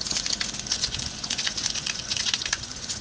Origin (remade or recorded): remade